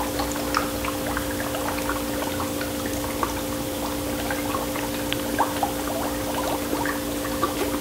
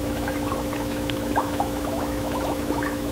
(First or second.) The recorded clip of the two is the first